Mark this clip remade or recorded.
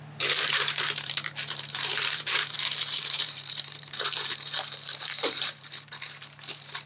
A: remade